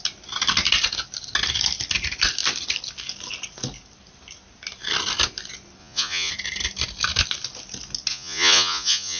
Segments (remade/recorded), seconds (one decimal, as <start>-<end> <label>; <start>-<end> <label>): 0.0-5.8 recorded; 5.8-6.3 remade; 6.3-8.1 recorded; 8.1-9.2 remade